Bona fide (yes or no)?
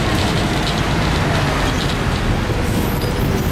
yes